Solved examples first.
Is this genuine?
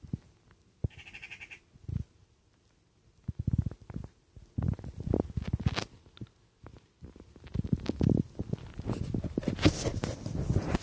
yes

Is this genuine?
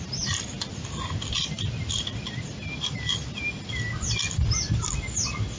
yes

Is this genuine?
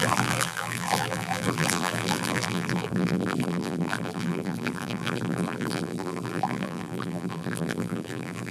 no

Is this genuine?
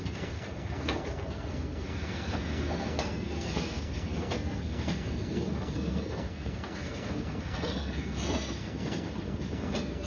no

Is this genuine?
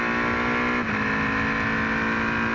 yes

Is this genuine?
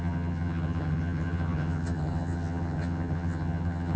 no